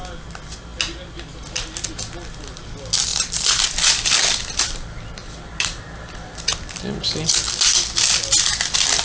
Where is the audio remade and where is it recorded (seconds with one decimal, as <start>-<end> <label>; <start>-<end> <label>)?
0.0-3.1 recorded; 3.1-6.8 remade; 6.8-9.0 recorded

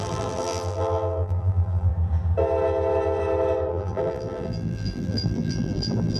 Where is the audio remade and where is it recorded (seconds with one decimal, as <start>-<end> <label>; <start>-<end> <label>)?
0.0-1.9 remade; 1.9-3.7 recorded; 3.7-6.2 remade

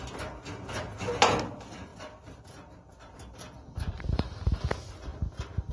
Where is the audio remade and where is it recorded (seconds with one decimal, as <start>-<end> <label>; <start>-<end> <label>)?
0.0-1.9 recorded; 1.9-3.9 remade; 3.9-5.7 recorded

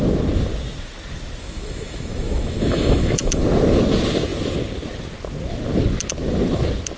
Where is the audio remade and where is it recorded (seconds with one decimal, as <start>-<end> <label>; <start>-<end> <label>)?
0.0-1.4 recorded; 1.4-3.4 remade; 3.4-7.0 recorded

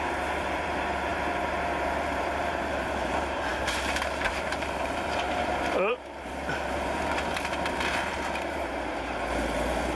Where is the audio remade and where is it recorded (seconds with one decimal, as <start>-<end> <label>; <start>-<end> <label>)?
0.0-9.9 remade